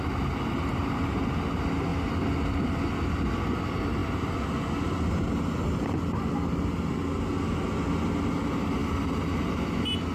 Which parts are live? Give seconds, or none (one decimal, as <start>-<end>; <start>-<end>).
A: 0.0-1.9; 2.8-8.8; 9.3-10.1